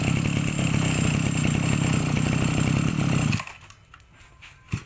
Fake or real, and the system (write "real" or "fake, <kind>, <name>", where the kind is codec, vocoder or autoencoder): real